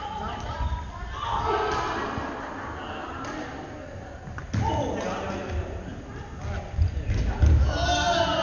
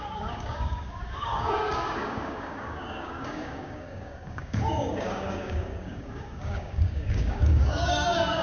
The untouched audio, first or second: first